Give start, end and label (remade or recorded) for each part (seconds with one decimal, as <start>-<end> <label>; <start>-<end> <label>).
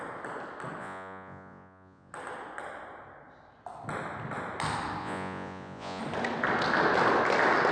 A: 0.0-0.8 recorded; 0.8-2.1 remade; 2.1-5.0 recorded; 5.0-6.0 remade; 6.0-7.7 recorded